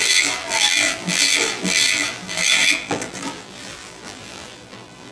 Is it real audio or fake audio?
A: fake